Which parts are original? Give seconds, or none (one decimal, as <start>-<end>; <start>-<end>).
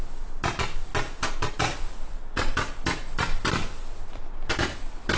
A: 0.0-5.2